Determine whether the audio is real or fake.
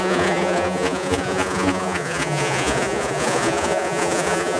fake